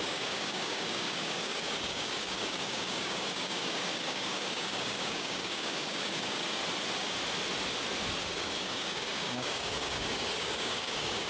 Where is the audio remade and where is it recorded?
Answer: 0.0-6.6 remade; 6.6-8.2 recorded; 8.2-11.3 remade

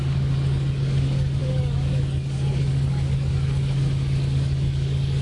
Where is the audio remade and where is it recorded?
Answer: 0.0-5.2 remade

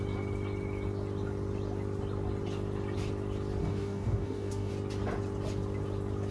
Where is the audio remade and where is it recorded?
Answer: 0.0-3.6 recorded; 3.6-4.7 remade; 4.7-6.3 recorded

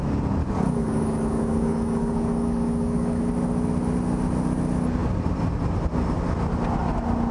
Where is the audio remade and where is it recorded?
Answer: 0.0-0.4 recorded; 0.4-3.2 remade; 3.2-7.3 recorded

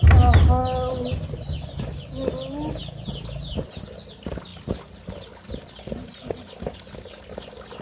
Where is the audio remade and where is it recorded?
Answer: 0.0-7.8 recorded

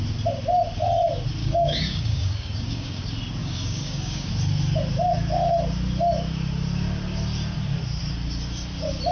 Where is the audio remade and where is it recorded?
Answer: 0.0-1.4 recorded; 1.4-3.0 remade; 3.0-3.4 recorded; 3.4-4.3 remade; 4.3-9.1 recorded

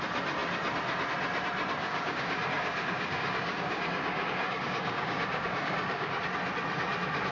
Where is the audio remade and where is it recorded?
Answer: 0.0-1.8 recorded; 1.8-6.2 remade; 6.2-7.3 recorded